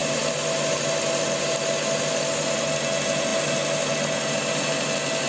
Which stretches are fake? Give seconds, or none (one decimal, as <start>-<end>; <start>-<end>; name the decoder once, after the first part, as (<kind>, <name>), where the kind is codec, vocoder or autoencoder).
none